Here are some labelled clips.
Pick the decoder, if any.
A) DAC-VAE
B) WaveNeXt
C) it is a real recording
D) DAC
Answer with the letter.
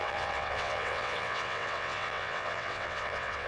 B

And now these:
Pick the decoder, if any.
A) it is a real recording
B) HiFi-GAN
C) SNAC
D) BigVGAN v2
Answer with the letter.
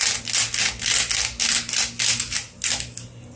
A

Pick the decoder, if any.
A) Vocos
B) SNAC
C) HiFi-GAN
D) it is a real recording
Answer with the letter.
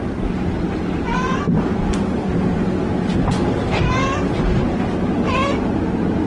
D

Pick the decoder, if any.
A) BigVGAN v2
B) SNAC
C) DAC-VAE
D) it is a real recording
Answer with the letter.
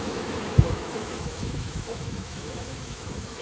C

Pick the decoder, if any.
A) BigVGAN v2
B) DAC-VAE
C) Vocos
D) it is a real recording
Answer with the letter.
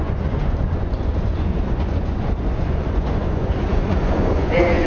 C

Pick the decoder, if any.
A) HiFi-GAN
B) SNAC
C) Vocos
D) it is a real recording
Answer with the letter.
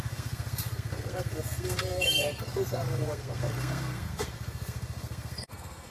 B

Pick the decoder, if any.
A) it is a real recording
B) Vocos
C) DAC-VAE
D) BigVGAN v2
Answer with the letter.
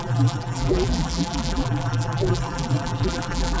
D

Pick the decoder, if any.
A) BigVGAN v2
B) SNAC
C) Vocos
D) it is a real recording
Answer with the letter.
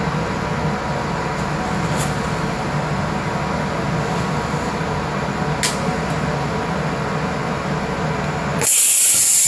D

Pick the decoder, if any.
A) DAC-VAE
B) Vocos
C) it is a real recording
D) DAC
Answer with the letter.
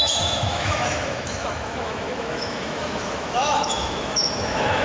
A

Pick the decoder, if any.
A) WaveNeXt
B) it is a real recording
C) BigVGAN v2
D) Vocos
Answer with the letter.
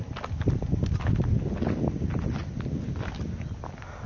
B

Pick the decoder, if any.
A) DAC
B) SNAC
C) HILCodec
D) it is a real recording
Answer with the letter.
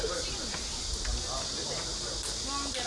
D